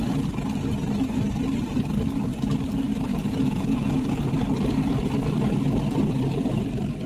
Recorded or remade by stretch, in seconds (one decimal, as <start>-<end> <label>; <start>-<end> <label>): 0.0-3.1 recorded; 3.1-4.2 remade; 4.2-7.1 recorded